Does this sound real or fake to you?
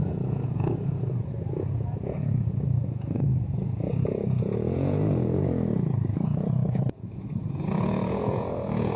fake